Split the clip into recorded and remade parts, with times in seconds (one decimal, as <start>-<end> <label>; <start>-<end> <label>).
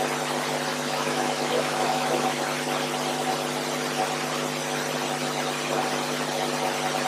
0.0-0.7 recorded; 0.7-2.4 remade; 2.4-7.1 recorded